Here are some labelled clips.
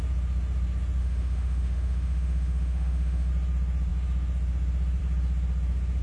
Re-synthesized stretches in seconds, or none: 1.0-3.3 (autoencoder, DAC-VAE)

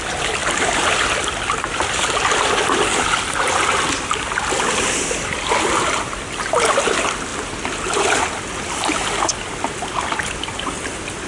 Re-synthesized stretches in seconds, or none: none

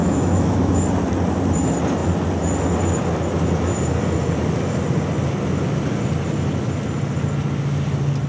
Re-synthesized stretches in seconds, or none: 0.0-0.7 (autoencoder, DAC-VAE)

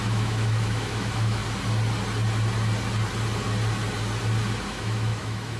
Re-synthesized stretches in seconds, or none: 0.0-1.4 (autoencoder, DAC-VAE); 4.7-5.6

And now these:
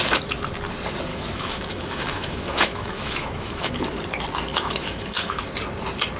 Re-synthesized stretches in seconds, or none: 1.1-3.7 (autoencoder, DAC-VAE); 4.5-5.4